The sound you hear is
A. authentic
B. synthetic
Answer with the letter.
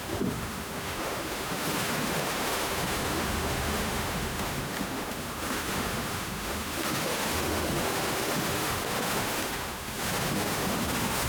B